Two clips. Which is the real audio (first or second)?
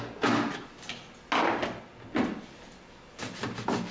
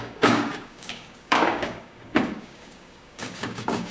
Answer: first